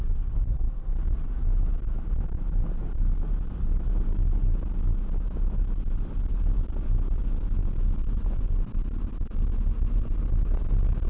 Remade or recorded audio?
recorded